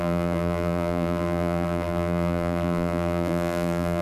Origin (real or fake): fake